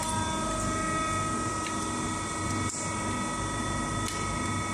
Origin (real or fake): real